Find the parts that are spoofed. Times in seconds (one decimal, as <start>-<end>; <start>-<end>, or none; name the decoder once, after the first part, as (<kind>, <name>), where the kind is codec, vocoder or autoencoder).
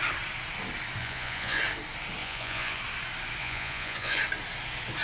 1.0-1.6 (vocoder, Vocos); 2.2-2.8; 3.4-4.2